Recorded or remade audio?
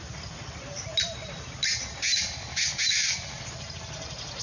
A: recorded